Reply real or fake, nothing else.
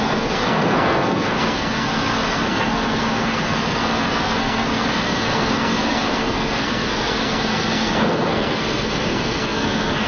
fake